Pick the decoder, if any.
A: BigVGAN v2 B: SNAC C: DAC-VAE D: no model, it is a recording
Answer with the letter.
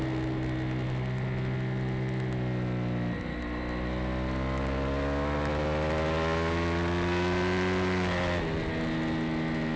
D